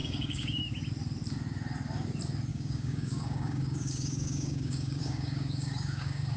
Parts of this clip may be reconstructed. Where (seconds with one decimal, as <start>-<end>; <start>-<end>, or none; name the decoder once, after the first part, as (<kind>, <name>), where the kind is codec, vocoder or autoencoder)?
0.0-0.6 (codec, DAC); 2.5-6.4